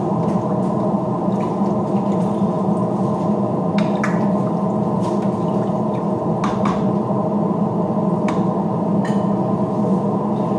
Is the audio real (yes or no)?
yes